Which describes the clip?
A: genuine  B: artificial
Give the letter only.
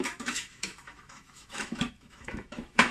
B